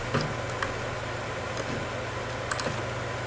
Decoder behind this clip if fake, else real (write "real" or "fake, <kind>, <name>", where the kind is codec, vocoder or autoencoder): real